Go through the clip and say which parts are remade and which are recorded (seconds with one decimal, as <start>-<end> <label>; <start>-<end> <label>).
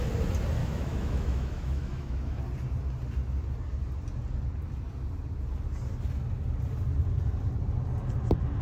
0.0-0.6 recorded; 0.6-2.4 remade; 2.4-8.6 recorded